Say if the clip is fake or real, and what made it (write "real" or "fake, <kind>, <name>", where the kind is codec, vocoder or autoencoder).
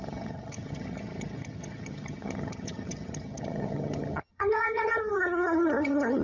fake, vocoder, HiFi-GAN